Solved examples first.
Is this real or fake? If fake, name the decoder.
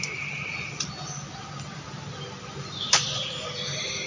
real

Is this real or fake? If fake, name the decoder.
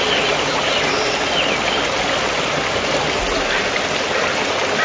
real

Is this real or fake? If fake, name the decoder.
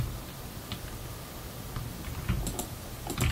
real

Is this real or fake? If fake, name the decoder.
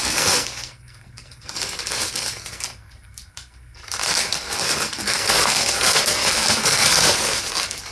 fake, codec, SNAC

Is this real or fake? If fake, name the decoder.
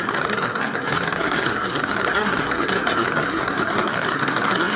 fake, codec, SNAC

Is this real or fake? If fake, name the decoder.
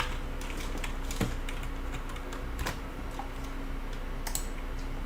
real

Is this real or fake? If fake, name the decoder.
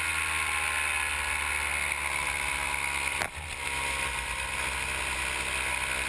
real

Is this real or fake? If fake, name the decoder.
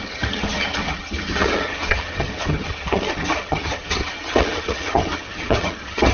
fake, vocoder, HiFi-GAN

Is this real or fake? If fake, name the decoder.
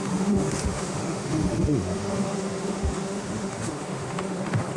fake, autoencoder, DAC-VAE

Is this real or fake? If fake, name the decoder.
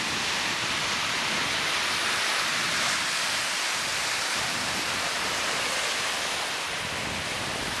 fake, vocoder, BigVGAN v2